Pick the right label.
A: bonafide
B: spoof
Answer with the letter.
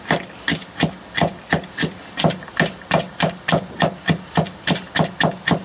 A